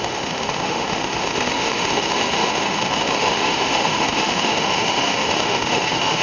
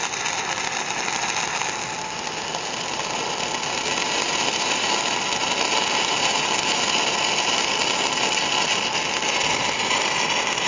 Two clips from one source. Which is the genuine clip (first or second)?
second